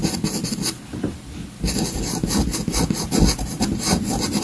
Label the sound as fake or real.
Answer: real